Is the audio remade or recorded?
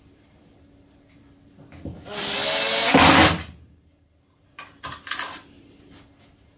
recorded